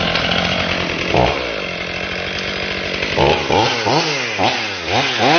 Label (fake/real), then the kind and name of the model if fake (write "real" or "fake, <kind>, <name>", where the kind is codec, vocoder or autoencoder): real